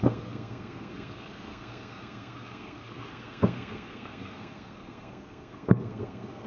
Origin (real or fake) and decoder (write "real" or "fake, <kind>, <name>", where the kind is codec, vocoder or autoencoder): fake, codec, SNAC